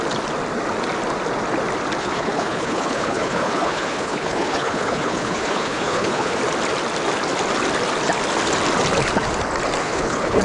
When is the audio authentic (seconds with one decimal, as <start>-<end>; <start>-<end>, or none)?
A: 0.0-2.0; 6.4-9.8